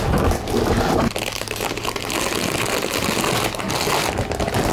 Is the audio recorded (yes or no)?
yes